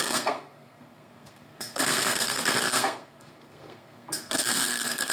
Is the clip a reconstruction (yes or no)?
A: yes